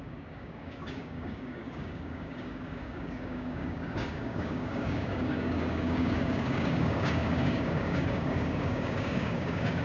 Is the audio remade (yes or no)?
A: yes